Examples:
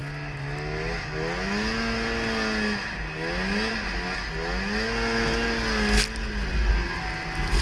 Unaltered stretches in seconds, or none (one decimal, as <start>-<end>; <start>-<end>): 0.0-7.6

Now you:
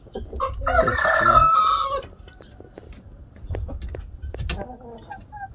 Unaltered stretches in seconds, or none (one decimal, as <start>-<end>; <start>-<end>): 0.0-5.5

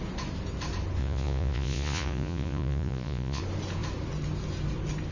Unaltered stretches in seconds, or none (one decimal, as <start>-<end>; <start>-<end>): 0.0-1.0; 3.4-5.1

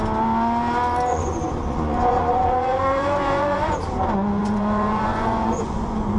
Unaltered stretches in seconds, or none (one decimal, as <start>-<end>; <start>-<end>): 0.0-1.1; 3.8-4.4

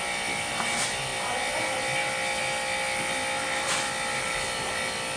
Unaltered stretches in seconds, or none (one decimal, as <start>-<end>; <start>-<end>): 0.0-5.2

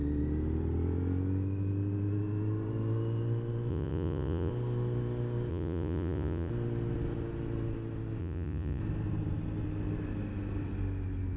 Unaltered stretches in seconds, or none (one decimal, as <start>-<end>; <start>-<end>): 0.0-3.7; 4.5-5.5; 6.5-8.2; 8.8-11.4

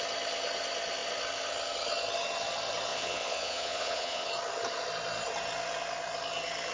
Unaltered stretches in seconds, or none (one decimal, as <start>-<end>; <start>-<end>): 0.0-2.9; 4.3-6.7